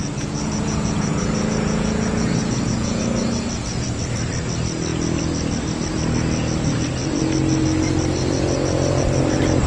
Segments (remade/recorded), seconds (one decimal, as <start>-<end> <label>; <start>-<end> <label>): 0.0-3.0 remade; 3.0-9.7 recorded

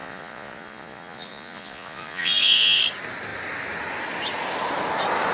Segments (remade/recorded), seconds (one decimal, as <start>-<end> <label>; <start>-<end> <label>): 0.0-2.8 remade; 2.8-5.3 recorded

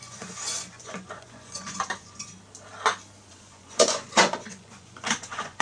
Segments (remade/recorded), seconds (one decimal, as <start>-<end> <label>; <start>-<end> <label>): 0.0-2.3 remade; 2.3-3.3 recorded; 3.3-5.6 remade